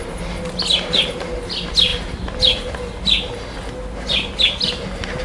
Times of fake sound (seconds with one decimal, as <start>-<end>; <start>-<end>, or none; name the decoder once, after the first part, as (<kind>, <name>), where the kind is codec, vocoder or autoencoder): none